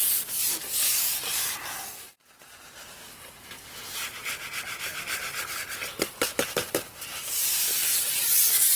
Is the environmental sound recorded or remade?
recorded